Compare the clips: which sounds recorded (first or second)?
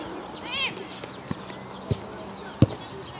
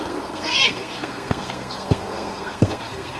first